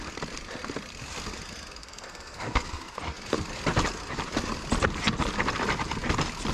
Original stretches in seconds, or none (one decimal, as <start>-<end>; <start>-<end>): 0.0-1.8; 3.0-6.5